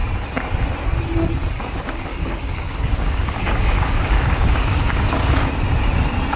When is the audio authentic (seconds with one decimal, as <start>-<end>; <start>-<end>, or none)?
0.0-2.1; 5.3-6.4